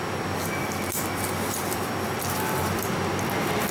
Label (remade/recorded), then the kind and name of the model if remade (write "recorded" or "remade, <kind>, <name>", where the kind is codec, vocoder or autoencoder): recorded